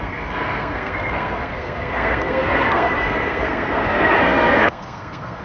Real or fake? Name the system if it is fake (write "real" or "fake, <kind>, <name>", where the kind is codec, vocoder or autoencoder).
fake, codec, SNAC